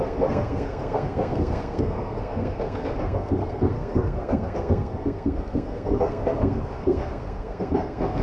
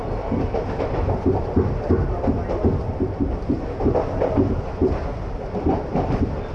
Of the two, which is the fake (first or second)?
first